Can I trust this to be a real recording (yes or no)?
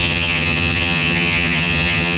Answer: no